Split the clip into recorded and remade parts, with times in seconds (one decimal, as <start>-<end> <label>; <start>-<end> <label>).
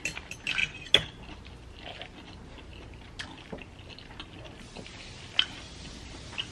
0.0-6.5 recorded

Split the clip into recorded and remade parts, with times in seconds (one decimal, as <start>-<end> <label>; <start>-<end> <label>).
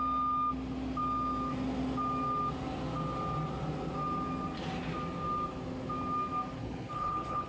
0.0-6.6 recorded; 6.6-7.5 remade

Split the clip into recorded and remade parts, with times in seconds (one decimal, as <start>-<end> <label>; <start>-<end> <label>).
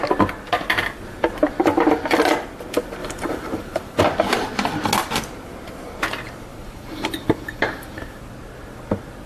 0.0-3.0 recorded; 3.0-4.0 remade; 4.0-6.5 recorded; 6.5-8.2 remade; 8.2-9.3 recorded